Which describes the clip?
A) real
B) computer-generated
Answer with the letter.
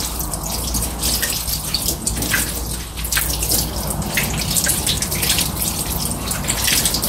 A